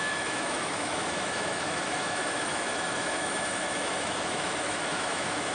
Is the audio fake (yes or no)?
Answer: yes